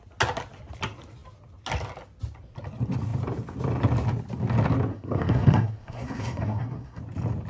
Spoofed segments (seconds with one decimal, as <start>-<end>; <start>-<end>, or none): 4.9-7.0